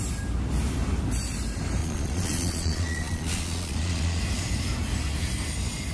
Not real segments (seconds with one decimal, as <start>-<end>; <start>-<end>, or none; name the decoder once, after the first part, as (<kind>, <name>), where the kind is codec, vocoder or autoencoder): 1.8-4.2 (vocoder, Vocos)